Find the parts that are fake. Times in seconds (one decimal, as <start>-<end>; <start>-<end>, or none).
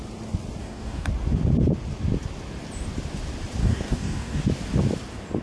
0.6-1.1; 3.6-4.5